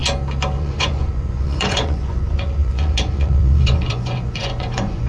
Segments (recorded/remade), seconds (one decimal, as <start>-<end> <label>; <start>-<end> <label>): 0.0-0.6 recorded; 0.6-5.1 remade